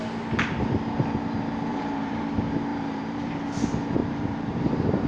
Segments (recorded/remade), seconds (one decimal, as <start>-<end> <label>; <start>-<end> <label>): 0.0-1.7 recorded; 1.7-2.3 remade; 2.3-2.7 recorded; 2.7-3.3 remade; 3.3-4.0 recorded; 4.0-4.6 remade; 4.6-5.1 recorded